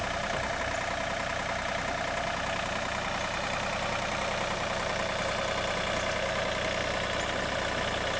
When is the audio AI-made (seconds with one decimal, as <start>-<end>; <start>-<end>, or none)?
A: none